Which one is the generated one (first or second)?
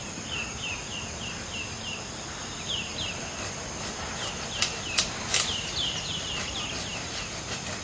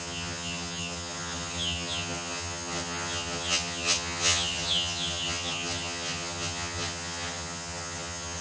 second